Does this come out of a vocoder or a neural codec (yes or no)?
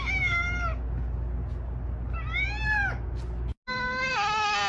no